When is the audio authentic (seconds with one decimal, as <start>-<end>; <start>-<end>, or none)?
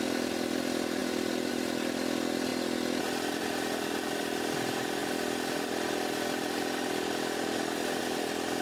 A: 0.0-8.6